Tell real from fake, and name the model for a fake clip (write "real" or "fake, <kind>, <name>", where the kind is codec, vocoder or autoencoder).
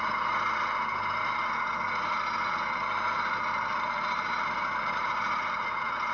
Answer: real